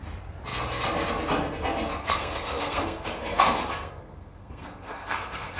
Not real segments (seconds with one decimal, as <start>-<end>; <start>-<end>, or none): 2.0-5.6